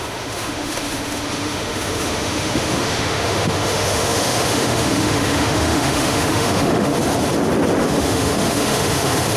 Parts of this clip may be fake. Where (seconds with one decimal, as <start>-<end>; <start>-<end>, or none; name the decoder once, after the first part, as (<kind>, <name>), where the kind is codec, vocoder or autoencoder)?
0.0-6.9 (autoencoder, DAC-VAE); 7.8-9.4